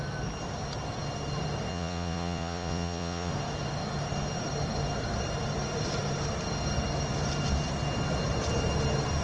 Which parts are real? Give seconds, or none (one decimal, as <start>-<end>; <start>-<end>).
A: 0.0-1.7; 3.3-9.2